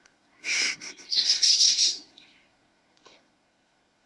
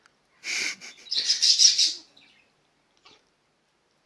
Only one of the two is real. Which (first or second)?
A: second